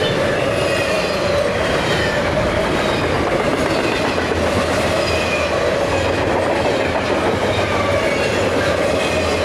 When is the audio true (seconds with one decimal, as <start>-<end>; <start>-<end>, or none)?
0.0-9.4